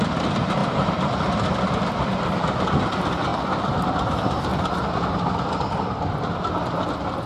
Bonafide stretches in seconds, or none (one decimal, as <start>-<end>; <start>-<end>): 0.0-0.6; 1.5-3.3; 3.9-7.3